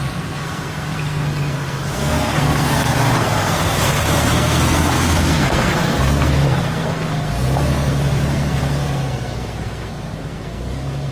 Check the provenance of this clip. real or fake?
fake